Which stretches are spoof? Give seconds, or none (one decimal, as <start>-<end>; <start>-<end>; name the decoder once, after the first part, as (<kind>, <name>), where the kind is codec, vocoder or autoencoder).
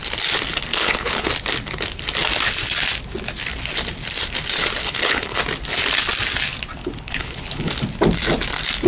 0.7-1.3 (codec, HILCodec); 4.8-5.4; 6.8-7.7